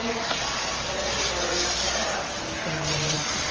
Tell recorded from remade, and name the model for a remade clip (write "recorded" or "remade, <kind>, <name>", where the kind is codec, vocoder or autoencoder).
recorded